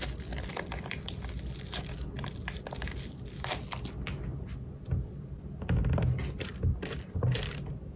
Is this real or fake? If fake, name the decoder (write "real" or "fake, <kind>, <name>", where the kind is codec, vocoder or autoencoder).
real